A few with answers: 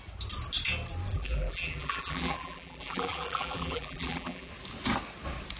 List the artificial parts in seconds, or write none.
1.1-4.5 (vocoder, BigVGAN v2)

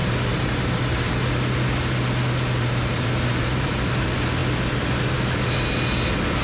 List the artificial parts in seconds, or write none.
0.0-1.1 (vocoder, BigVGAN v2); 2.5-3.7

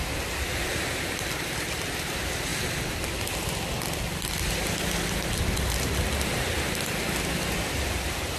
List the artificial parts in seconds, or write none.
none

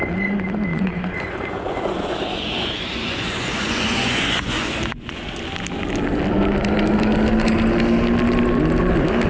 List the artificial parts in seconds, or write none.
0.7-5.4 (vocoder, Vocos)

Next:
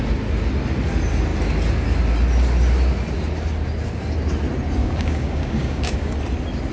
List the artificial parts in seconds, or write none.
4.8-6.2 (codec, DAC)